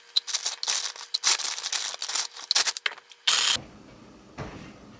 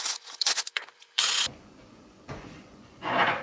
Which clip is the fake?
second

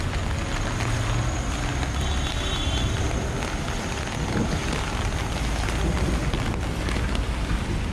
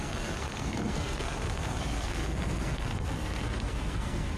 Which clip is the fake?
second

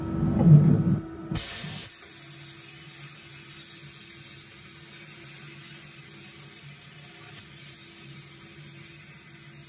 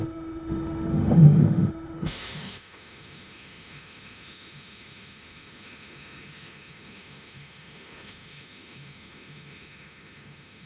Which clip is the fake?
second